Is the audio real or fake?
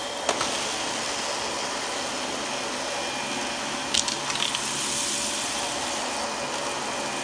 real